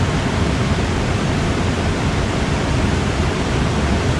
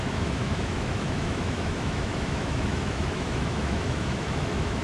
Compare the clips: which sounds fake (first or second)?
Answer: second